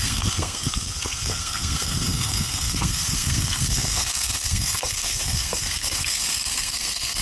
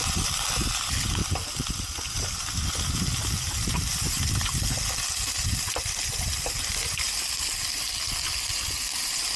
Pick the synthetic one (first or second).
first